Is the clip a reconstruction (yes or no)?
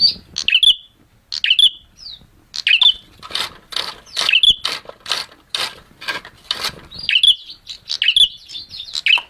no